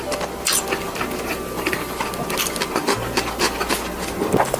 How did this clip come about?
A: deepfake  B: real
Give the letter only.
B